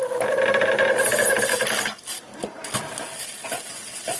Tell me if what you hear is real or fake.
real